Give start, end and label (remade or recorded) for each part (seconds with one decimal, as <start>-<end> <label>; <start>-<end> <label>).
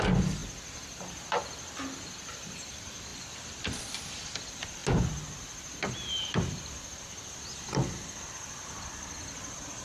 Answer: 0.0-0.4 remade; 0.4-2.3 recorded; 2.3-4.8 remade; 4.8-7.3 recorded; 7.3-9.8 remade